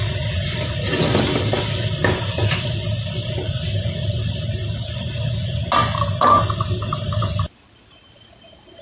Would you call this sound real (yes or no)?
yes